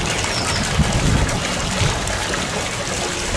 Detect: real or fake real